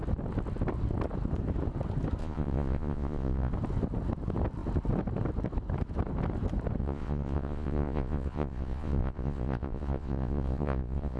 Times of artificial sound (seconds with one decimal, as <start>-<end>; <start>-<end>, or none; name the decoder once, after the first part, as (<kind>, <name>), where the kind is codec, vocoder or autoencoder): 2.2-3.5 (vocoder, Vocos); 6.8-11.2